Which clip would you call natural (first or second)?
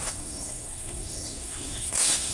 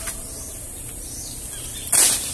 second